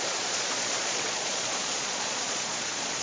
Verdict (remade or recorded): remade